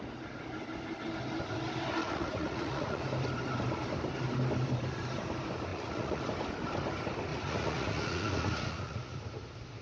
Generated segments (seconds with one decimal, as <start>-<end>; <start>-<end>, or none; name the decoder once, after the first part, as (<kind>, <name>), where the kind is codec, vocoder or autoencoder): 2.0-3.0 (vocoder, Vocos); 5.7-6.2; 7.3-9.2